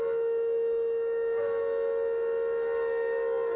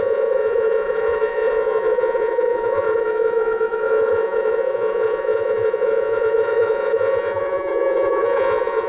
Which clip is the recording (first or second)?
first